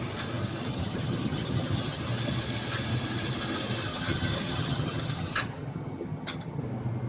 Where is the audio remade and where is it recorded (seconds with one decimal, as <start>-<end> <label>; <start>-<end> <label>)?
0.0-0.7 recorded; 0.7-2.0 remade; 2.0-3.9 recorded; 3.9-6.6 remade; 6.6-7.1 recorded